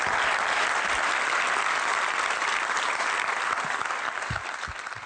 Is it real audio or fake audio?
real